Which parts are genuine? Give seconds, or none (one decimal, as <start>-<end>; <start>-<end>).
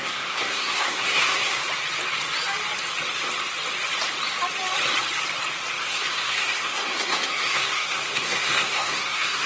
1.6-5.8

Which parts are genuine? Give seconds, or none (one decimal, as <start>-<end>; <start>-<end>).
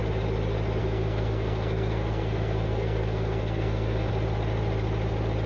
0.0-0.8; 4.1-5.5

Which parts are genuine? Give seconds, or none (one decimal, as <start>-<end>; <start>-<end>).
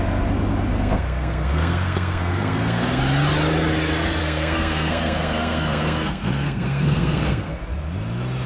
0.0-0.7; 3.0-4.2; 7.5-8.5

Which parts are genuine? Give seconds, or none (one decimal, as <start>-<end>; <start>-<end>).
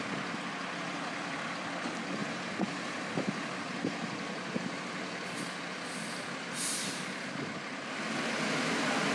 0.0-9.1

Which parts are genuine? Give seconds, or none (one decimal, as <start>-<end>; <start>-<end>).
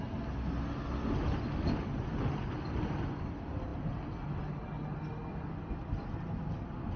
0.0-7.0